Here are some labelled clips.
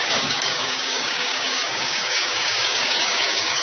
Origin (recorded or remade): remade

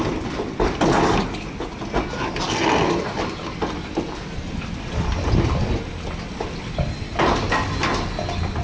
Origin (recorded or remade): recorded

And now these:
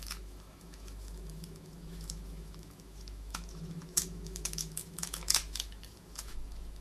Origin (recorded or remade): remade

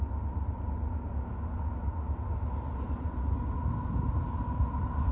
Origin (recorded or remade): recorded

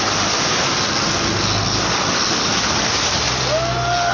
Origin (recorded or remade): recorded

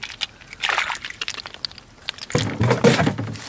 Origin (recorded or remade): recorded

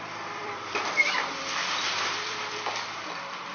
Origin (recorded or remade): remade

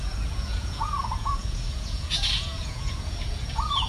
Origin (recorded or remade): remade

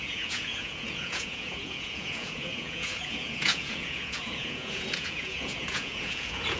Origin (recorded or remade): remade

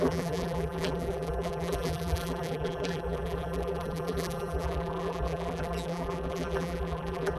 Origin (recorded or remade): remade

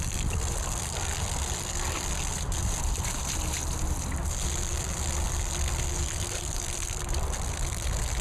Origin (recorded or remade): recorded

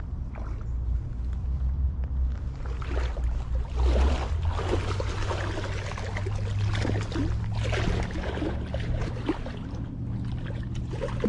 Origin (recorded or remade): recorded